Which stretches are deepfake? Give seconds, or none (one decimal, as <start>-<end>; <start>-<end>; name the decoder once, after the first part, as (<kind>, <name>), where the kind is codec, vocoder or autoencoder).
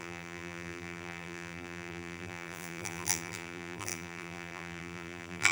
0.0-5.5 (vocoder, BigVGAN v2)